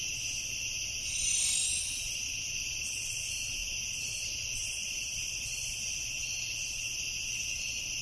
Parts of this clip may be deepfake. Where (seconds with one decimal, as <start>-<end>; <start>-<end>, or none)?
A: 3.6-4.3; 4.8-6.2